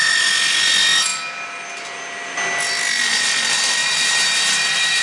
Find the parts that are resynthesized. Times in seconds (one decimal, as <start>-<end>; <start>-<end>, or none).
3.8-5.0